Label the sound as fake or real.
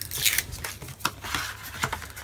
real